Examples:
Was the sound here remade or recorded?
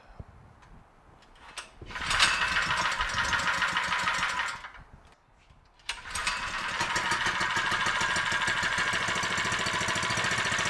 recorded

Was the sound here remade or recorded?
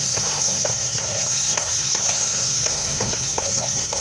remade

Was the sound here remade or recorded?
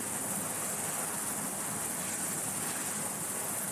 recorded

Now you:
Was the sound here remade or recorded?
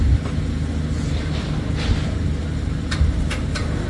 recorded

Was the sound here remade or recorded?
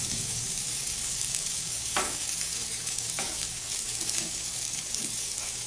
remade